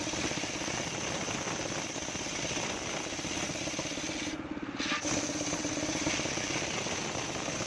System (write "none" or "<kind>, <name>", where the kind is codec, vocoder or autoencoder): none